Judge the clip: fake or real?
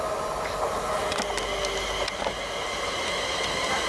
real